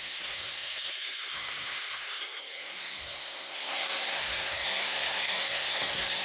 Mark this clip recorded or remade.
remade